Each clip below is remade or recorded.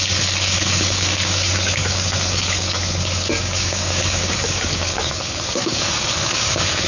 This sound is remade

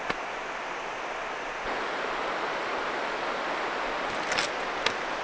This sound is recorded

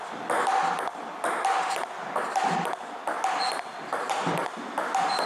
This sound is recorded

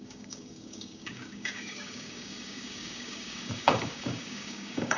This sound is remade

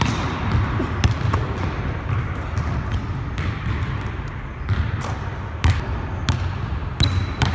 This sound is recorded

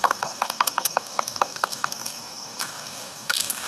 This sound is remade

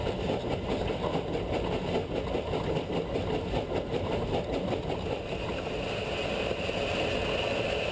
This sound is recorded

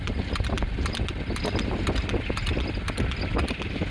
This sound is recorded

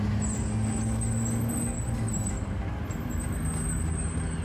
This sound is recorded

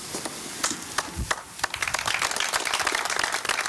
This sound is recorded